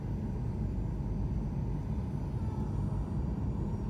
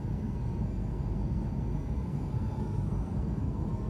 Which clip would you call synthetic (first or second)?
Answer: second